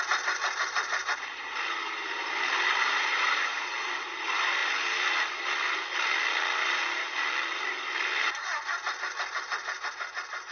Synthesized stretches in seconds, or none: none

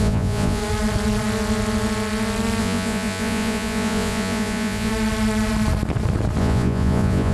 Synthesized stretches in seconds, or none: 0.0-0.6 (vocoder, Vocos); 2.6-4.9; 6.4-7.3

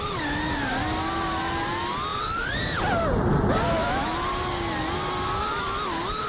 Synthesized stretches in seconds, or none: none